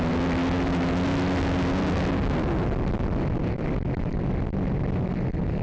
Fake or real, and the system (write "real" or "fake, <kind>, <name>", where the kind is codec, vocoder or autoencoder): real